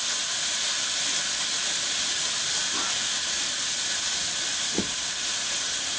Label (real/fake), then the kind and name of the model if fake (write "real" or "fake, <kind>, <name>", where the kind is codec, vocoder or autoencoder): real